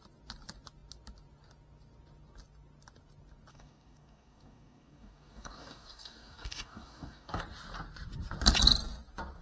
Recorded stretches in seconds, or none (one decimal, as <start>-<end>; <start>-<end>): 0.0-3.5; 7.4-9.4